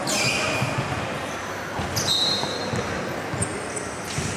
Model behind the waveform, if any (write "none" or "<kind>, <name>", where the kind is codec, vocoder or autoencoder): none